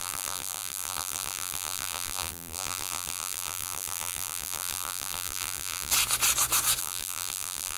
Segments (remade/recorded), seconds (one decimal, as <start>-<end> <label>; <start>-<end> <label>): 0.0-5.9 remade; 5.9-6.8 recorded; 6.8-7.8 remade